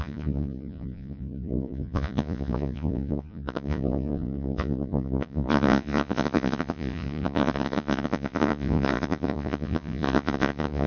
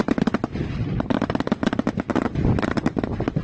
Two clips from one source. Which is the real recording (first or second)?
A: second